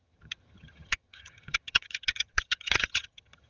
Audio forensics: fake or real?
fake